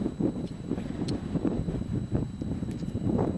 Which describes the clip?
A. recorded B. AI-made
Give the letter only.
B